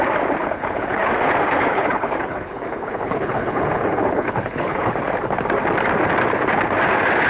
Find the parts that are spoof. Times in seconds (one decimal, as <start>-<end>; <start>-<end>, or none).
0.4-1.1; 1.7-4.9